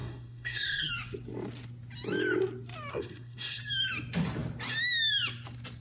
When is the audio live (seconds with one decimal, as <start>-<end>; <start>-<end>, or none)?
0.9-2.9; 3.6-5.8